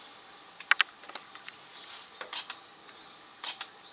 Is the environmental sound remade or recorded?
recorded